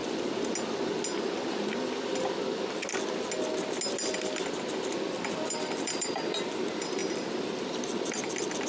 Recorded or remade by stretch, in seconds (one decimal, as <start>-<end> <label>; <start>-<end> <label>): 0.0-4.9 recorded; 4.9-8.7 remade